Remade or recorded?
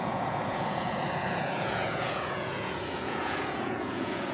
remade